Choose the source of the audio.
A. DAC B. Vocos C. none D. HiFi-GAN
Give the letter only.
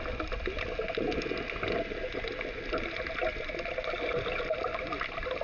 C